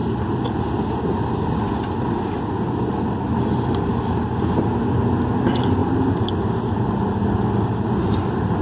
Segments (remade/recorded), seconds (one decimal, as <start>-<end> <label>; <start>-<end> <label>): 0.0-8.6 recorded